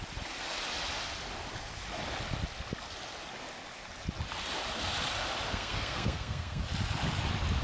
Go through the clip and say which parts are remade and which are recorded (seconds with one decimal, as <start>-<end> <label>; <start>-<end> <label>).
0.0-5.5 recorded; 5.5-6.6 remade; 6.6-7.6 recorded